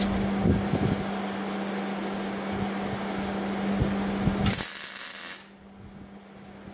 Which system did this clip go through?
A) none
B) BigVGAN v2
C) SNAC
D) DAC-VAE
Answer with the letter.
A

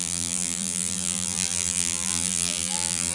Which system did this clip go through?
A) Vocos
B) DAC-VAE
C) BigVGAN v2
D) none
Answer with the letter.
C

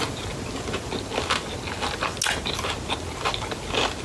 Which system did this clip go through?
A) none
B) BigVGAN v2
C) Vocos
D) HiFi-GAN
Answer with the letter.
A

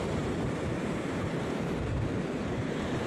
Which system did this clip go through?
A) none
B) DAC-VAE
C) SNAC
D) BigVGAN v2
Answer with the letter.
D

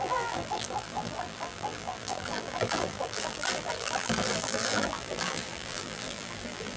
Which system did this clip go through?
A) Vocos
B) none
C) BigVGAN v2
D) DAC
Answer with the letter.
C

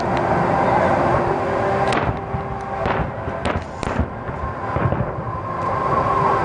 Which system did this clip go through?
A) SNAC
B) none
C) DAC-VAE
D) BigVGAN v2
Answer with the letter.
B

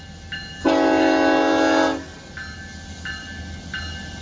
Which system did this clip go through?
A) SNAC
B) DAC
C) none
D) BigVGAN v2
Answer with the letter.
C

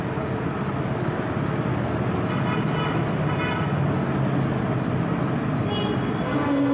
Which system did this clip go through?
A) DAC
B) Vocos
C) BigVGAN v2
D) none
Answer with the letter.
D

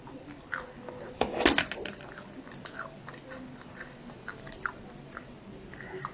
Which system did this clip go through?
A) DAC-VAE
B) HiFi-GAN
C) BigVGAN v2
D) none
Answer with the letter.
D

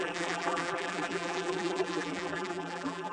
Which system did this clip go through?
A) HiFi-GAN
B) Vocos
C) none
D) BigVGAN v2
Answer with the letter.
D